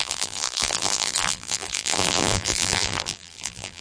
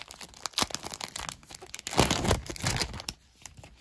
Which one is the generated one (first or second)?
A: first